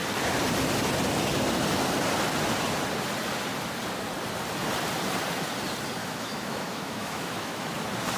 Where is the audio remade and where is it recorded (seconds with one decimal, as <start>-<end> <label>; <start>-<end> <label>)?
0.0-6.0 recorded; 6.0-7.7 remade; 7.7-8.2 recorded